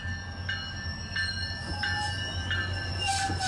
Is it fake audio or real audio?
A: real